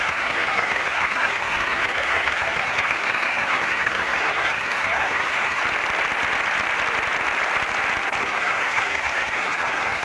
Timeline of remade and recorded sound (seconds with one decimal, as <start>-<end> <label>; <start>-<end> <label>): 0.0-5.6 remade; 5.6-8.2 recorded; 8.2-10.0 remade